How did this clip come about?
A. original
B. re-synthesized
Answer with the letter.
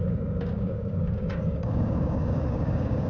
B